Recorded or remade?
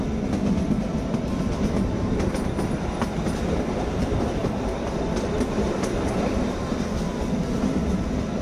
recorded